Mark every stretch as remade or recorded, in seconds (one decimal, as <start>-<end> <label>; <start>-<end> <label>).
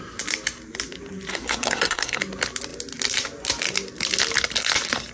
0.0-1.3 recorded; 1.3-2.2 remade; 2.2-5.1 recorded